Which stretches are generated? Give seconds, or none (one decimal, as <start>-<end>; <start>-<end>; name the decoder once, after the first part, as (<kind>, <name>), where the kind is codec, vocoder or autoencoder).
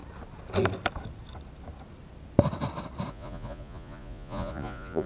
3.1-5.1 (vocoder, Vocos)